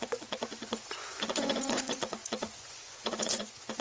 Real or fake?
fake